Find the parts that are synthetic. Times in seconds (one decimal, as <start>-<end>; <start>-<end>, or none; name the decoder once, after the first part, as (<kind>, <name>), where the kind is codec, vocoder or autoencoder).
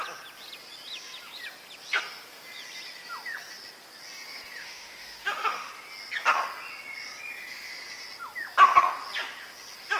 4.6-5.7 (autoencoder, DAC-VAE)